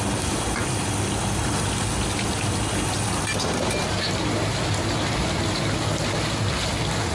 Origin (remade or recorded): recorded